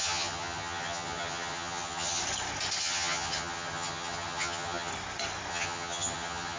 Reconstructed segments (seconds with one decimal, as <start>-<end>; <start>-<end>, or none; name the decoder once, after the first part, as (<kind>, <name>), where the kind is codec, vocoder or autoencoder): 0.0-2.2 (vocoder, HiFi-GAN); 2.8-4.9; 5.5-6.6